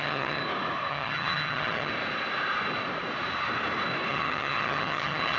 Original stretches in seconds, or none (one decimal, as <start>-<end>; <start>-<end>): 0.4-0.9; 1.9-4.1